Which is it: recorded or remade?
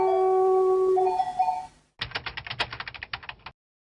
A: recorded